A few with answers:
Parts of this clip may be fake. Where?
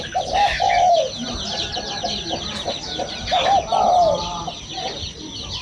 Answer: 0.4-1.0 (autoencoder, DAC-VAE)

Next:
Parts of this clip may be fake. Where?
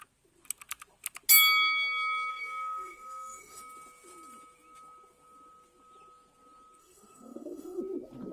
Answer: 2.3-3.6 (autoencoder, DAC-VAE); 6.8-7.8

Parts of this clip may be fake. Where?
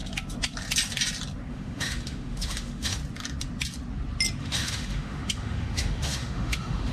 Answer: 1.5-3.0 (autoencoder, DAC-VAE); 4.4-6.9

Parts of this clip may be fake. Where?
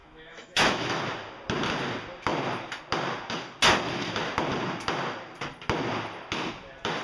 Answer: 0.0-1.0 (autoencoder, DAC-VAE)